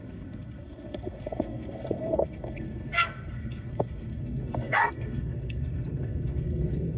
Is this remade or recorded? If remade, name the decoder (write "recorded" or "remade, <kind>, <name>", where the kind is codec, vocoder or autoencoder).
remade, codec, SNAC